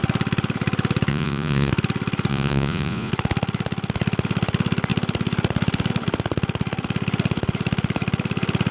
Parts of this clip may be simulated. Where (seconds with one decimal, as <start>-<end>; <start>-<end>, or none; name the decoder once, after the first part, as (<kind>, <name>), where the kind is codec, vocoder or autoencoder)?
1.1-1.7 (vocoder, Vocos); 2.3-3.1